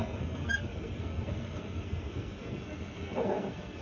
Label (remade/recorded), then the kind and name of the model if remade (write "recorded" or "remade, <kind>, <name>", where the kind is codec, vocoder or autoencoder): remade, codec, SNAC